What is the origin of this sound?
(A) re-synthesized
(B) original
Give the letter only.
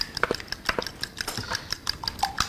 B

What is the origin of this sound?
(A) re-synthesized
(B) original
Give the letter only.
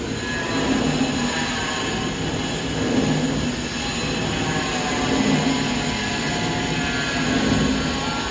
B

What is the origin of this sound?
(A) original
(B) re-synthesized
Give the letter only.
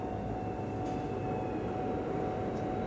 A